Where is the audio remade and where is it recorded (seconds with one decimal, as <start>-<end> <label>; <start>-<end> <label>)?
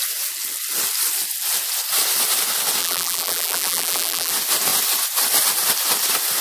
0.0-2.8 recorded; 2.8-4.3 remade; 4.3-6.4 recorded